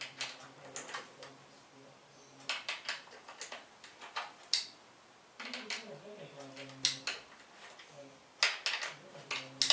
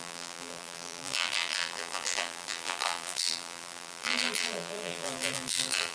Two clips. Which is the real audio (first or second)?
first